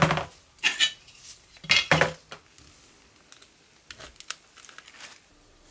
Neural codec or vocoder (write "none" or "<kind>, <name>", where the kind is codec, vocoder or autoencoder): none